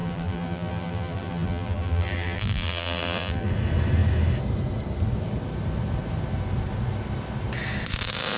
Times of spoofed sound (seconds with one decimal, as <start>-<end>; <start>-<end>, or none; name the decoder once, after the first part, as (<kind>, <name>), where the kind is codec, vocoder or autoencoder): 0.0-3.5 (vocoder, BigVGAN v2)